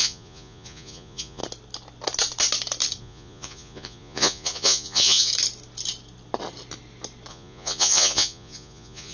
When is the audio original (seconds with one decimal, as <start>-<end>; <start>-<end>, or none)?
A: 1.4-3.0; 5.3-7.3